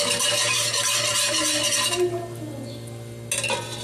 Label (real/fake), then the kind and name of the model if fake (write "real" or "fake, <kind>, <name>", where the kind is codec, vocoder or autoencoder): real